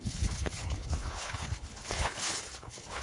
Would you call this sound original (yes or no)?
no